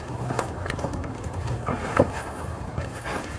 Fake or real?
fake